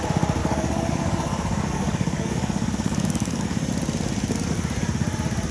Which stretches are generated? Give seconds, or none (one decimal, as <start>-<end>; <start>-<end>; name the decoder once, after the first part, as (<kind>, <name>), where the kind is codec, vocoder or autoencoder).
0.4-3.7 (codec, DAC)